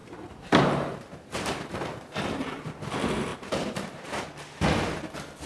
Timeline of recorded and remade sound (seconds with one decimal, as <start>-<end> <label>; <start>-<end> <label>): 0.0-2.9 remade; 2.9-3.3 recorded; 3.3-4.2 remade; 4.2-5.5 recorded